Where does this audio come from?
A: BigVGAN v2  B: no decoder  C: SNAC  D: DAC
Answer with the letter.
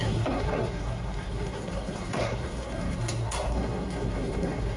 C